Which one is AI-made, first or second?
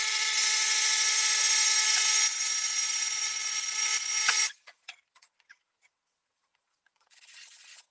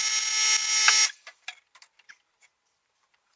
first